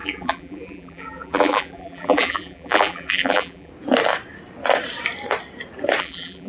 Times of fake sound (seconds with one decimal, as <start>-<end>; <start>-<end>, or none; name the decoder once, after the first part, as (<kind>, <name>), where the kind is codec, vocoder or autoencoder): 0.0-3.7 (vocoder, BigVGAN v2); 6.0-6.5